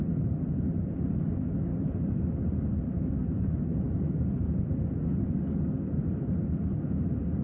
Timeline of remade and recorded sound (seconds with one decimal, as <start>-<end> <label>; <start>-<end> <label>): 0.0-7.4 recorded